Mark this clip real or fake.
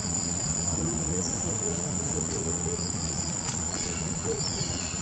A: fake